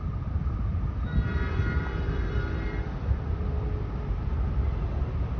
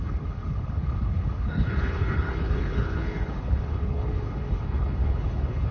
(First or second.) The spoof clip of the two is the second